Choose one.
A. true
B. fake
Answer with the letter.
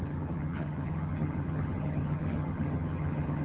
B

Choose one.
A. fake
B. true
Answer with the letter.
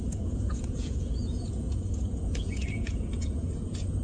A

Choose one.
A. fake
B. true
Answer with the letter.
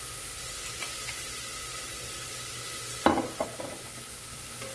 B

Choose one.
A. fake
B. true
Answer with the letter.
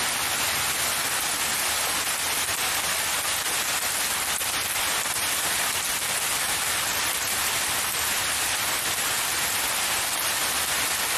B